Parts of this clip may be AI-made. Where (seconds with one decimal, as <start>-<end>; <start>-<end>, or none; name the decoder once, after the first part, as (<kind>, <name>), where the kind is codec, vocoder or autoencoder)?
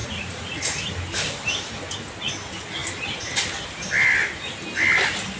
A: 0.0-0.6 (vocoder, Vocos)